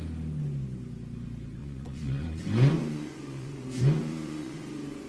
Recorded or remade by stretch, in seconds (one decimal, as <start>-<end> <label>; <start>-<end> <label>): 0.0-1.6 recorded; 1.6-5.1 remade

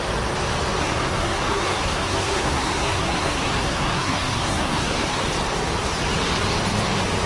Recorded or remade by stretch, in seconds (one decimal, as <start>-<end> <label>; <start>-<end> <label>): 0.0-0.8 recorded; 0.8-5.2 remade; 5.2-7.3 recorded

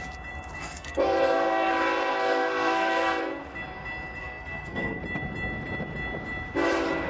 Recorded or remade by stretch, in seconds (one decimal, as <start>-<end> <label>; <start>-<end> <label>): 0.0-0.6 recorded; 0.6-1.7 remade; 1.7-2.1 recorded; 2.1-3.2 remade; 3.2-4.2 recorded; 4.2-5.0 remade; 5.0-7.1 recorded